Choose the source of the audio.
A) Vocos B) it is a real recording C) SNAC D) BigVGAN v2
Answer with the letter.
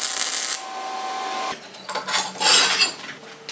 B